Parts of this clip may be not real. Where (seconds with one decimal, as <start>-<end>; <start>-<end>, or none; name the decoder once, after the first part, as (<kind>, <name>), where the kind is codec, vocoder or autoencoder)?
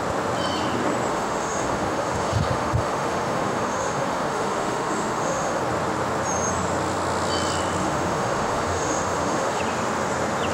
1.1-5.6 (autoencoder, DAC-VAE); 7.8-9.6